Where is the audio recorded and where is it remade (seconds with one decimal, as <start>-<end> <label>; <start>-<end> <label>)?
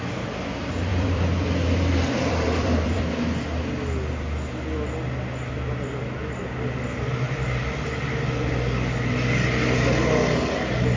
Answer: 0.0-0.9 recorded; 0.9-3.0 remade; 3.0-11.0 recorded